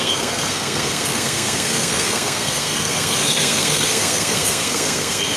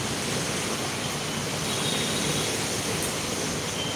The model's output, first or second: first